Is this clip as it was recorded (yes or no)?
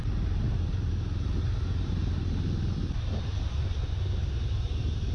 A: yes